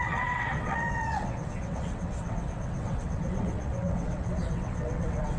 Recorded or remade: remade